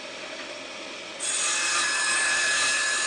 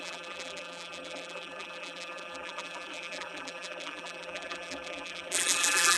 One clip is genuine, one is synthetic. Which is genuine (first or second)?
first